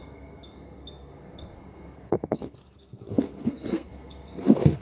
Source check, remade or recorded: remade